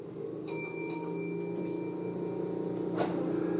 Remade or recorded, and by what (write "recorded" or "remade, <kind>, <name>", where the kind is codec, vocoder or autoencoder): recorded